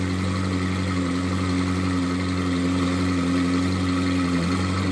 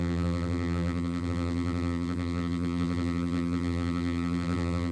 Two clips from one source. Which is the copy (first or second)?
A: second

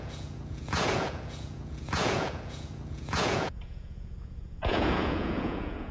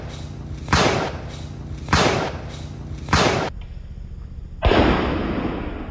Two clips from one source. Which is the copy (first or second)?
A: first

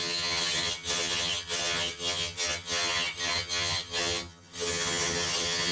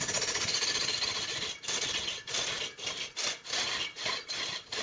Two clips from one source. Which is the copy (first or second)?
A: first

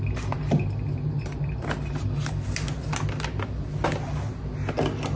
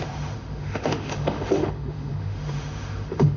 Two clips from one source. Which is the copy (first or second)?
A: second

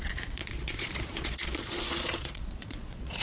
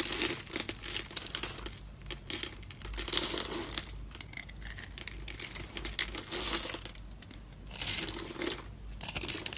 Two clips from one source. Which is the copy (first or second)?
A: first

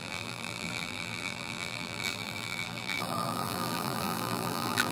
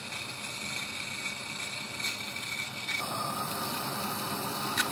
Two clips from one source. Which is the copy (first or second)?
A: first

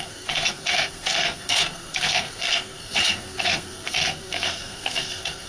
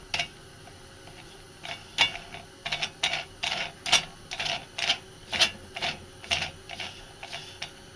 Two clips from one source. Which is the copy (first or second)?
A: first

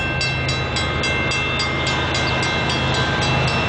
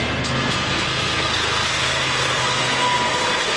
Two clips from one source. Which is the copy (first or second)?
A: second